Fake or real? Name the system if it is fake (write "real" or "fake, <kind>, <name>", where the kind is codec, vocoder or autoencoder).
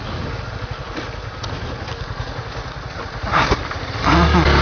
real